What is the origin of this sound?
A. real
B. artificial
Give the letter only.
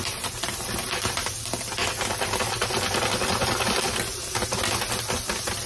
A